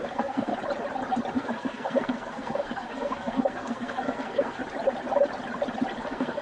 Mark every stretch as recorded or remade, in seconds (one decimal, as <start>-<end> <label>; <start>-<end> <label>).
0.0-0.5 remade; 0.5-1.3 recorded; 1.3-4.6 remade; 4.6-6.0 recorded; 6.0-6.4 remade